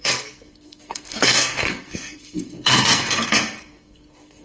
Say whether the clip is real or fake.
fake